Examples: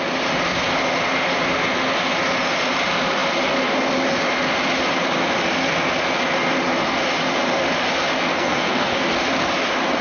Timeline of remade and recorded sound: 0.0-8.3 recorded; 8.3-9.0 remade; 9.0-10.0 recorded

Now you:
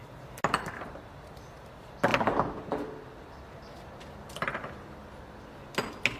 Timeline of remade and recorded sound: 0.0-6.2 recorded

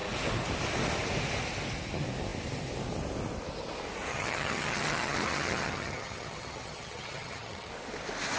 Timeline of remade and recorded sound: 0.0-4.1 recorded; 4.1-7.7 remade; 7.7-8.4 recorded

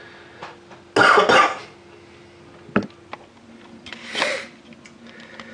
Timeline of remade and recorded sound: 0.0-5.5 recorded

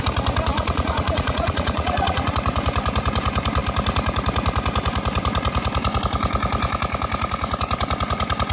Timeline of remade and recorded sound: 0.0-0.5 recorded; 0.5-2.3 remade; 2.3-8.5 recorded